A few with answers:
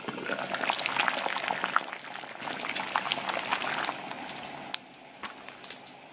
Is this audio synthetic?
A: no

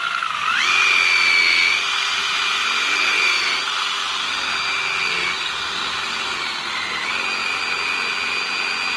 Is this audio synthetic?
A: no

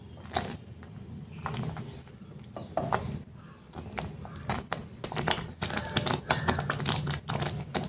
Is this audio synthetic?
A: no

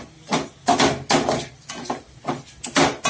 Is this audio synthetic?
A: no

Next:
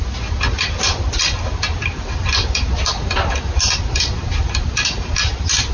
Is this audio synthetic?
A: no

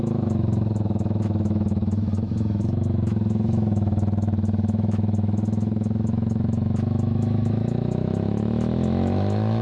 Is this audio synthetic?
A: yes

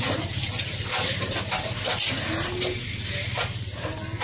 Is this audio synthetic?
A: no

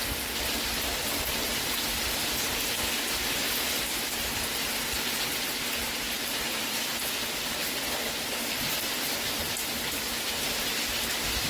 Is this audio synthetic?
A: yes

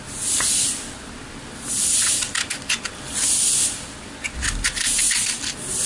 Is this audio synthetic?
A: no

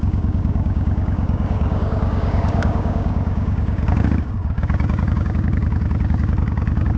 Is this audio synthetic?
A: yes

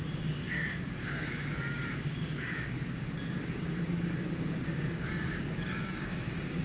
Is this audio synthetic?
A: yes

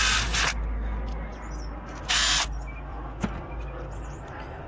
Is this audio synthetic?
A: no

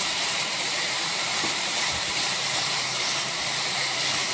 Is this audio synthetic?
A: yes